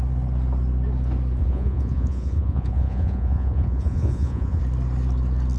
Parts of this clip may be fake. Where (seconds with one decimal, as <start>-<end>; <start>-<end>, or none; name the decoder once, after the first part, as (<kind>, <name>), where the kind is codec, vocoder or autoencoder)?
1.4-4.6 (vocoder, Vocos)